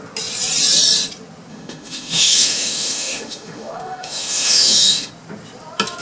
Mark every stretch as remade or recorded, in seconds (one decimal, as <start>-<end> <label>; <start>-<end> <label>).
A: 0.0-1.5 recorded; 1.5-5.1 remade; 5.1-6.0 recorded